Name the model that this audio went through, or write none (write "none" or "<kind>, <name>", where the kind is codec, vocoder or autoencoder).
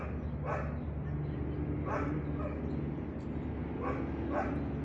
none